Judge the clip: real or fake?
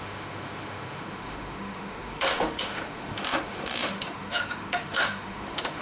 fake